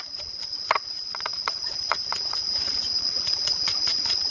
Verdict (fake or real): fake